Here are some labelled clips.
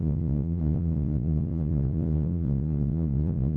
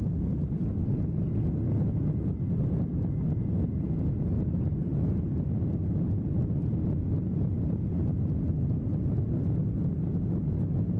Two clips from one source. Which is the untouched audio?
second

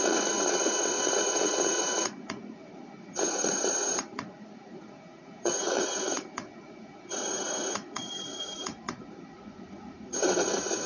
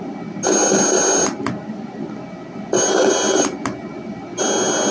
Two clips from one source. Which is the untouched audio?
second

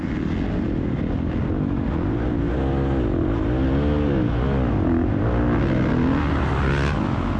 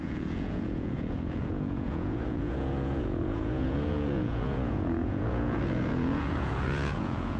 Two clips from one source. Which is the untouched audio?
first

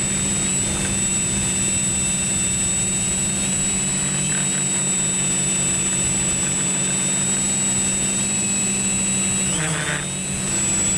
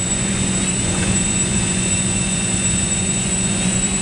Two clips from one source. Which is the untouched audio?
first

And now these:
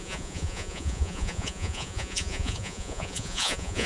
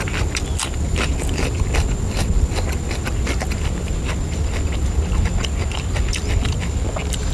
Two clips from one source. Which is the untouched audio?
second